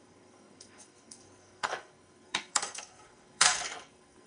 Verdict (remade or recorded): remade